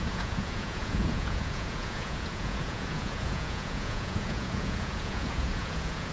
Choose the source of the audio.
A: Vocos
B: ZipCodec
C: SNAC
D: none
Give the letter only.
A